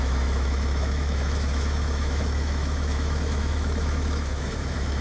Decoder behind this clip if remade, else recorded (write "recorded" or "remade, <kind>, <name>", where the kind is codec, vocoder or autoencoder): remade, autoencoder, DAC-VAE